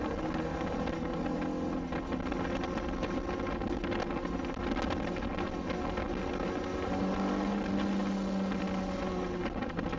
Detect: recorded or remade recorded